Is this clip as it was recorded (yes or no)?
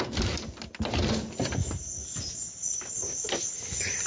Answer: yes